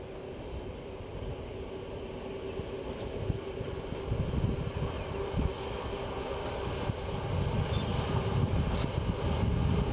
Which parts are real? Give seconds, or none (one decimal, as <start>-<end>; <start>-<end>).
0.0-7.9; 8.8-9.9